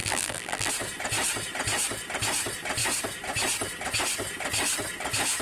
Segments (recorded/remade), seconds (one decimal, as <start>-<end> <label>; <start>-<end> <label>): 0.0-0.7 remade; 0.7-5.4 recorded

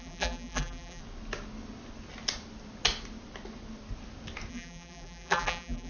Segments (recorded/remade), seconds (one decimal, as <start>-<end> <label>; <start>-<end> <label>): 0.0-1.0 remade; 1.0-4.5 recorded; 4.5-5.9 remade

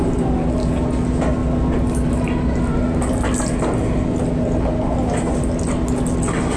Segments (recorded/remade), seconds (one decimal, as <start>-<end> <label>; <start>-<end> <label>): 0.0-6.6 recorded

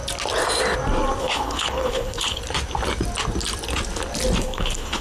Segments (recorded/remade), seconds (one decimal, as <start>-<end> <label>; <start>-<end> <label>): 0.0-1.2 recorded; 1.2-2.4 remade; 2.4-4.4 recorded; 4.4-5.0 remade